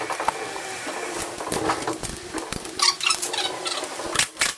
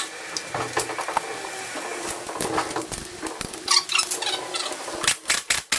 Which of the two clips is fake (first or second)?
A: first